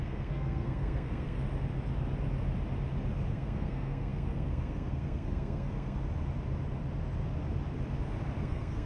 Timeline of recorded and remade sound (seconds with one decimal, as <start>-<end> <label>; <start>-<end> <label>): 0.0-1.4 remade; 1.4-3.3 recorded; 3.3-6.0 remade; 6.0-8.4 recorded; 8.4-8.9 remade